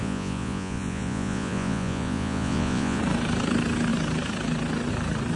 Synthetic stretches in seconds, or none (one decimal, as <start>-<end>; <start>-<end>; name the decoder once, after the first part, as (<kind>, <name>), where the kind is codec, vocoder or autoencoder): 0.0-3.0 (vocoder, Vocos)